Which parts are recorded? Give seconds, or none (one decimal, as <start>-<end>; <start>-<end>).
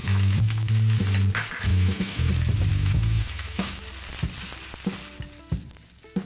0.7-1.7; 2.3-2.7; 3.8-6.3